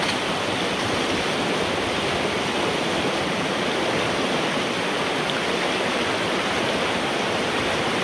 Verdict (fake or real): real